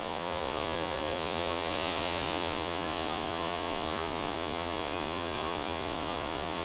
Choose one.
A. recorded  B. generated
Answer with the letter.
B